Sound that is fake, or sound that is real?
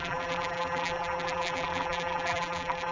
fake